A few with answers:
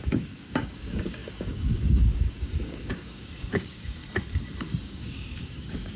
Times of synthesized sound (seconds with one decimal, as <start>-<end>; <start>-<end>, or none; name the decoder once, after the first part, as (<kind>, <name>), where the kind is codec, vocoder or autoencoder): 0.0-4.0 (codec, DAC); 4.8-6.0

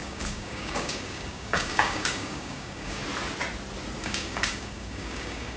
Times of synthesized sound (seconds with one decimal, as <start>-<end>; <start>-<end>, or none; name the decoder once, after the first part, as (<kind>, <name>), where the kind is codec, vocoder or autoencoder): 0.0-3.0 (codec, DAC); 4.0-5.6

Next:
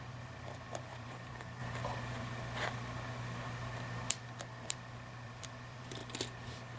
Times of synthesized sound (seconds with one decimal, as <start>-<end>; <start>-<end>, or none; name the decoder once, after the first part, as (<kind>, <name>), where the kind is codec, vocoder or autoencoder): 0.0-1.6 (vocoder, BigVGAN v2); 4.1-6.0

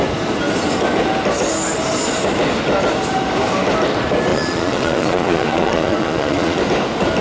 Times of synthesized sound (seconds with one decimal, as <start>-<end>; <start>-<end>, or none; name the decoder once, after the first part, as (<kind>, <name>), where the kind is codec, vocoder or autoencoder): 4.3-6.6 (vocoder, Vocos)

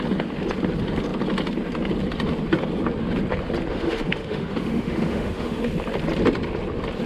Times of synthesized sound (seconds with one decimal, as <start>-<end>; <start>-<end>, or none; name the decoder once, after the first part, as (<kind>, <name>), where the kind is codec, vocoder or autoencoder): 3.7-5.7 (autoencoder, DAC-VAE)

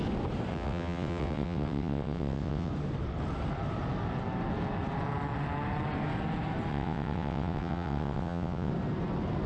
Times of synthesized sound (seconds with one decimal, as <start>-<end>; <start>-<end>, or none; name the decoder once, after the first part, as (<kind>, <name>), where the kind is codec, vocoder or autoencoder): 0.5-2.7 (vocoder, WaveNeXt); 6.7-8.7